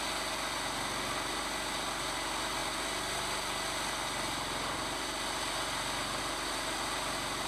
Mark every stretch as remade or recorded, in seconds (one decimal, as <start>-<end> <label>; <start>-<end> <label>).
0.0-7.5 recorded